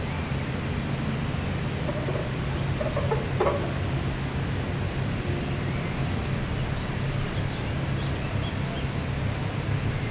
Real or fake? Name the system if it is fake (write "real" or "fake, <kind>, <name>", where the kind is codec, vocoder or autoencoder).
real